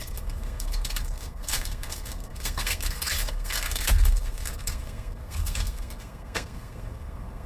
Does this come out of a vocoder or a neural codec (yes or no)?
yes